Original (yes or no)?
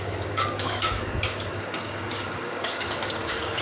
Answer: no